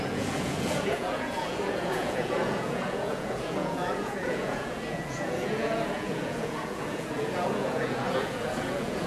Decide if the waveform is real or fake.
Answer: fake